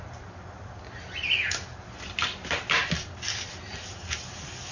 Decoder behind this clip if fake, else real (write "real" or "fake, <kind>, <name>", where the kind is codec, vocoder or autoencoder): real